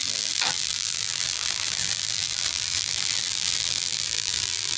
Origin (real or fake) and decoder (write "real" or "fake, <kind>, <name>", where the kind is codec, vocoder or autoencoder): fake, vocoder, BigVGAN v2